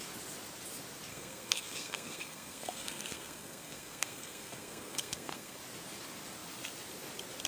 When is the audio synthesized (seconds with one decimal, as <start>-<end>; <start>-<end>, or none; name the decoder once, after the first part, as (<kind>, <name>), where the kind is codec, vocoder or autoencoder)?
1.1-5.6 (codec, SNAC)